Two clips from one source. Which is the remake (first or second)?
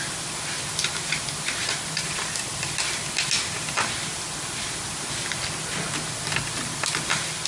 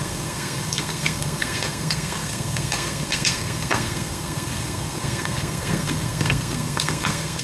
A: second